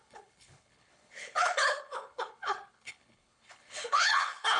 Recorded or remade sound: remade